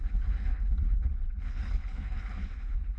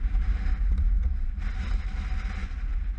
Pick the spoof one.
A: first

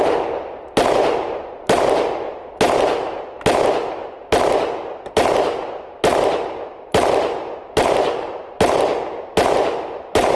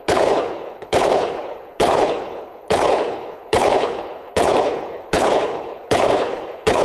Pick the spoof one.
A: second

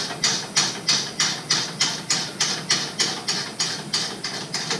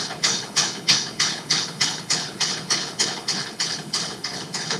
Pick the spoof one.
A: second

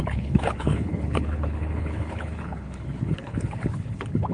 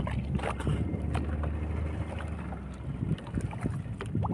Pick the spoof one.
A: first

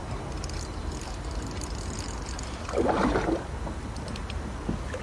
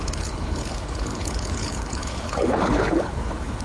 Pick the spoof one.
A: second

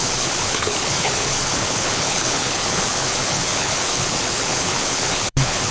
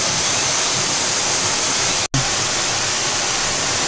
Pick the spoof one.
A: first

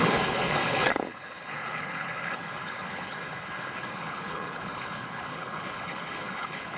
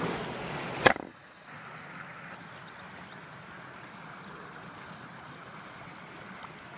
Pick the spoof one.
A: first